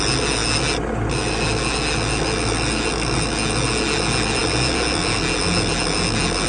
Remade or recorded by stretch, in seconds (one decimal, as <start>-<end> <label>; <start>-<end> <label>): 0.0-6.5 recorded